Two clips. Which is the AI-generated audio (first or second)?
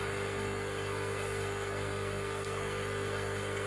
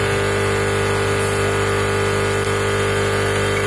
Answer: first